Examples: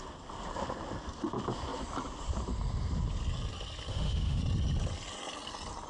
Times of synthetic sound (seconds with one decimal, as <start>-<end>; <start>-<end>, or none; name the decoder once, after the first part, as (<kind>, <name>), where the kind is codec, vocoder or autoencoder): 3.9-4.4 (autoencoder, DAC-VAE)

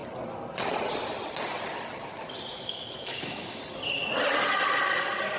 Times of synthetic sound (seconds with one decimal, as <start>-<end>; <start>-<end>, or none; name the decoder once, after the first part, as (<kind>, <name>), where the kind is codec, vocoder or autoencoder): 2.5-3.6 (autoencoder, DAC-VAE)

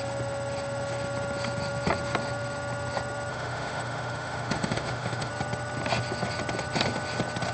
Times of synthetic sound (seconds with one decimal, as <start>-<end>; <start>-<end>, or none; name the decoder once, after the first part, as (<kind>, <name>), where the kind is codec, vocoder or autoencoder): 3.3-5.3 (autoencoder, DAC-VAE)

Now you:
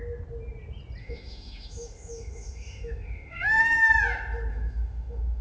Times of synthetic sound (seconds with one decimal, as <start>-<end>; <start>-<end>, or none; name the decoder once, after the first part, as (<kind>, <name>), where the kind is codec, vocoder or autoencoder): 1.0-3.9 (autoencoder, DAC-VAE); 4.5-5.4